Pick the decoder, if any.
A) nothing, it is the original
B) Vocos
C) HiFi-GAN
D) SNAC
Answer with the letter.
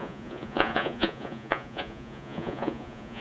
B